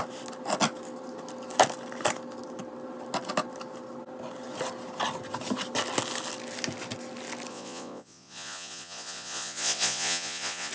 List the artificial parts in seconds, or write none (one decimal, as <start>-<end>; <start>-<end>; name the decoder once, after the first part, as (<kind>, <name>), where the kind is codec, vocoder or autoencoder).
7.5-10.7 (vocoder, Vocos)